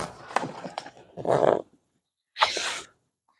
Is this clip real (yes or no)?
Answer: no